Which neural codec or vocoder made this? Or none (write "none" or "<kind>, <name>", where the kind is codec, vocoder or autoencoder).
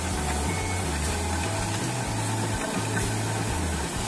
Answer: none